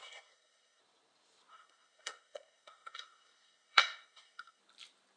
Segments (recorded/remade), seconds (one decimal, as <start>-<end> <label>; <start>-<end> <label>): 0.0-0.8 remade; 0.8-1.5 recorded; 1.5-4.6 remade; 4.6-5.2 recorded